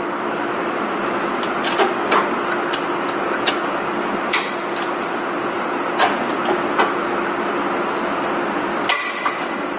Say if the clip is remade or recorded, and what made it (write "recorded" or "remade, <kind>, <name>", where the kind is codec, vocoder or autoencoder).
recorded